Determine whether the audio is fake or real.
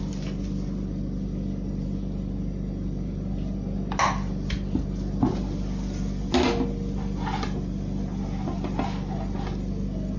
real